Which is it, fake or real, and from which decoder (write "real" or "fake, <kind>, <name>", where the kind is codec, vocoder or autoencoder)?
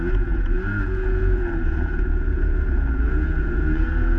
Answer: fake, vocoder, Vocos